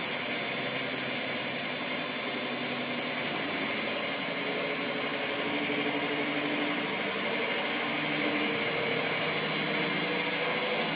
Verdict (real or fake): real